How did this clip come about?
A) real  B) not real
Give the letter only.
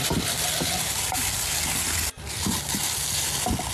A